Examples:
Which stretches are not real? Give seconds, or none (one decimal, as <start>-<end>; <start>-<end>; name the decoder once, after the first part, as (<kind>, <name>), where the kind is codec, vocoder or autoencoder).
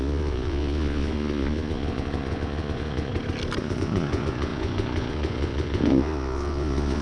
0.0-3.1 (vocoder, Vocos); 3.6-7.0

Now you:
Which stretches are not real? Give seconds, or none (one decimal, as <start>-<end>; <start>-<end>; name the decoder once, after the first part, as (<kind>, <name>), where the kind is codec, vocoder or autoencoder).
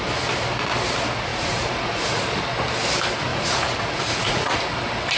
1.3-2.2 (vocoder, Vocos); 3.3-4.6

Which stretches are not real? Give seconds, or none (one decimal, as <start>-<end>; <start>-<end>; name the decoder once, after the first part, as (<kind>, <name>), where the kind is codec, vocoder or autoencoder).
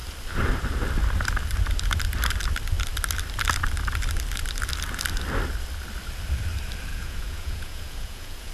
6.9-8.5 (vocoder, Vocos)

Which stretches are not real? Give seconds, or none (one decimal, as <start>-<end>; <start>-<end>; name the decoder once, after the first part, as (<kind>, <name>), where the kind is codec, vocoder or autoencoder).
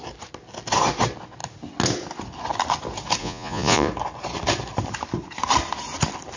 3.2-3.9 (vocoder, Vocos)